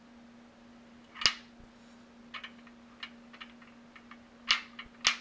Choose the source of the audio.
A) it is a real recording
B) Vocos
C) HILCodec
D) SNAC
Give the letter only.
A